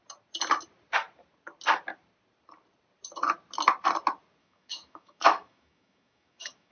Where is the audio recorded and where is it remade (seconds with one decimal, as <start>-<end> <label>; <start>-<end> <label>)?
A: 0.0-4.4 recorded; 4.4-6.7 remade